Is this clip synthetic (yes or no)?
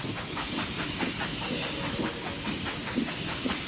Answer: no